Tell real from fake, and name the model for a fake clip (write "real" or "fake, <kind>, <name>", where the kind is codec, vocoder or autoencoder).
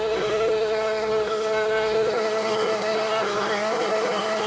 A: fake, codec, SNAC